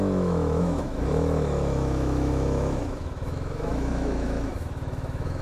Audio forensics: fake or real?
fake